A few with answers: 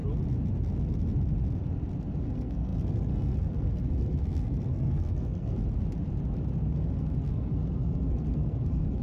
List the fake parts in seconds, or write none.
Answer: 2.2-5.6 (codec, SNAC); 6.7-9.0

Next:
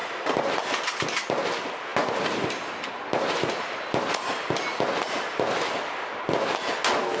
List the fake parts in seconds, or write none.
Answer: none

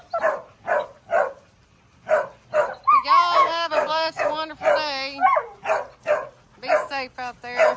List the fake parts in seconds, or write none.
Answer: 3.4-4.3 (codec, DAC)

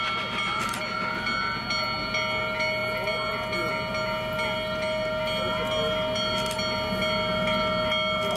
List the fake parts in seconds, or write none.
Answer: none

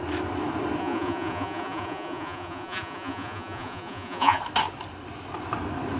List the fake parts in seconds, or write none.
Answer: 0.8-4.4 (vocoder, Vocos)

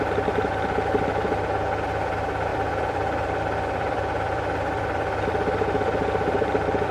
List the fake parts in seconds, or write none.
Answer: 2.5-6.9 (vocoder, BigVGAN v2)

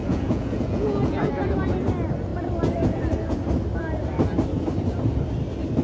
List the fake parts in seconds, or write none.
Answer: 0.0-1.3 (vocoder, Vocos)